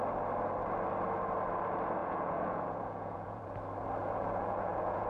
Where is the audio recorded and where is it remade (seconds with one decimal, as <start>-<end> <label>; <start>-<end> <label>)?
0.0-2.0 recorded; 2.0-3.4 remade; 3.4-4.0 recorded; 4.0-5.1 remade